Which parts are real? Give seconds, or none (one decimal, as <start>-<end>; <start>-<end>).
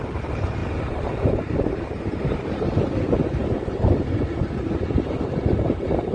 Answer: none